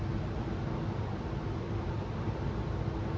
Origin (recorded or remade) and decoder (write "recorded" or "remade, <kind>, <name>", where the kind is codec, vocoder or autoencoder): recorded